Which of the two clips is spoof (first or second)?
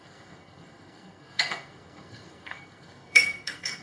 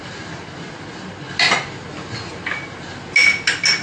first